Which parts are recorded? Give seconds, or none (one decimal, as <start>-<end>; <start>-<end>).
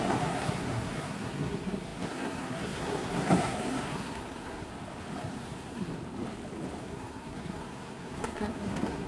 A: 4.7-5.2; 6.0-6.8